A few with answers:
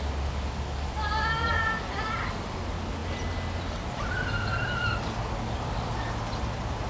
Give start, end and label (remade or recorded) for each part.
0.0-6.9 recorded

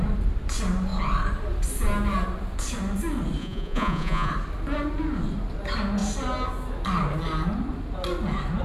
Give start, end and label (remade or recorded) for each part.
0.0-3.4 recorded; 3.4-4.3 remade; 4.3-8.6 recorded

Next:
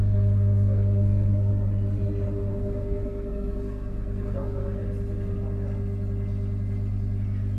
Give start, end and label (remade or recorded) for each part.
0.0-1.5 remade; 1.5-2.5 recorded; 2.5-4.8 remade; 4.8-7.6 recorded